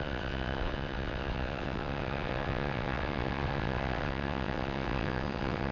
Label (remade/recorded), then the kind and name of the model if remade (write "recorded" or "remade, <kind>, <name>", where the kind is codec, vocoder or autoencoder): remade, vocoder, WaveNeXt